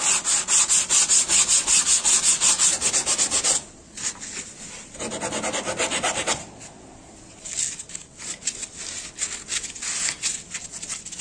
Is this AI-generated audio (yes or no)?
no